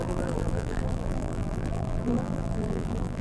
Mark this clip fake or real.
fake